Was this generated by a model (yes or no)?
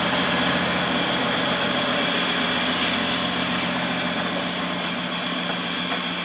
no